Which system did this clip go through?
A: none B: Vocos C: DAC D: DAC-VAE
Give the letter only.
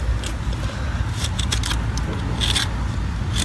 A